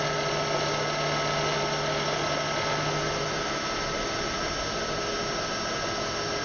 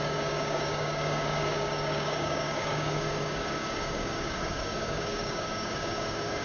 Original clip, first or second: first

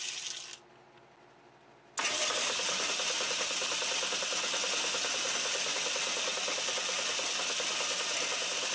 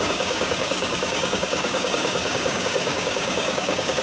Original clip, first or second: first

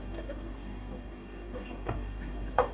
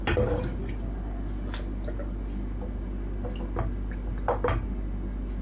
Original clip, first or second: second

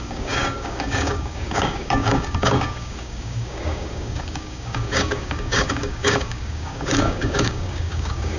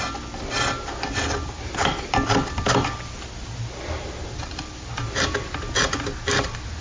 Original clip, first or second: second